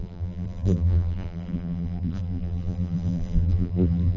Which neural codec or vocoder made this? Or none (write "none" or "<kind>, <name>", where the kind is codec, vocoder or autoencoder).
vocoder, BigVGAN v2